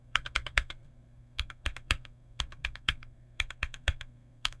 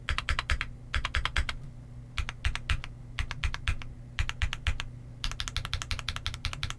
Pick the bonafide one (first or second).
second